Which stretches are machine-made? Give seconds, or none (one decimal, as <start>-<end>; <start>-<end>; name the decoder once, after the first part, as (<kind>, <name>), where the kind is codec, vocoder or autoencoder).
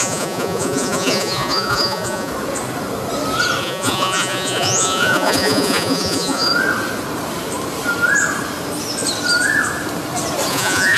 0.0-2.3 (vocoder, Vocos); 3.6-6.5; 10.5-11.0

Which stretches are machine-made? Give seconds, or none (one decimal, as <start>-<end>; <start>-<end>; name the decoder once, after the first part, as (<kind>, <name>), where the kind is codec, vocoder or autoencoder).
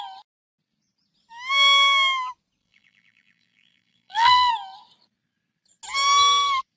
2.6-4.5 (vocoder, BigVGAN v2)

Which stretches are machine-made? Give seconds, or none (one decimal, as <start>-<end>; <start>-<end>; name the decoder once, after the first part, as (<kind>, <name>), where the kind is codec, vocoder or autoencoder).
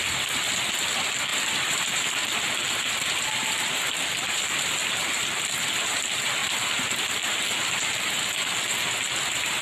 1.3-1.8 (vocoder, BigVGAN v2); 2.2-5.4; 6.4-8.2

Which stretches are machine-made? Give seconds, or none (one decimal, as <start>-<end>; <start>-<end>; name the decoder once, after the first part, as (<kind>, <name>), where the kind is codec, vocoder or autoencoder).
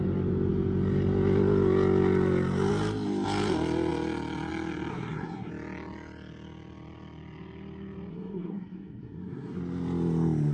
4.9-5.5 (codec, SNAC); 8.1-9.6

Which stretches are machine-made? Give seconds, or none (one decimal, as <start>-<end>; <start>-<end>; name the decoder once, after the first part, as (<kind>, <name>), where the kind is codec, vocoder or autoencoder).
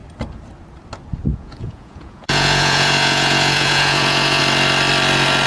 1.3-4.4 (vocoder, Vocos)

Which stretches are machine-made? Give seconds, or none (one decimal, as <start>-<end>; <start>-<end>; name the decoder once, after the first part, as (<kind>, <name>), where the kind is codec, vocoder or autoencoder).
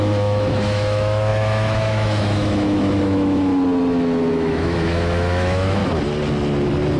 0.0-3.5 (autoencoder, DAC-VAE); 4.3-5.8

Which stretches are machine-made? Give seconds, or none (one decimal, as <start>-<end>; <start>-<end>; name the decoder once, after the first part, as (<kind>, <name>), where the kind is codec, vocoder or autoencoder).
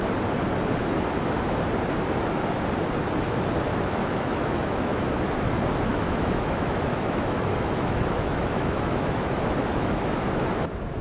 3.7-5.2 (autoencoder, DAC-VAE); 5.9-10.1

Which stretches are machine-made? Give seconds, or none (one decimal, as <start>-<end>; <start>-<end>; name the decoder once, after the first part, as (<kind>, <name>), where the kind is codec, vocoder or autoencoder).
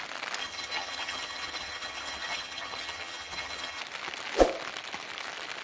0.4-3.8 (vocoder, HiFi-GAN)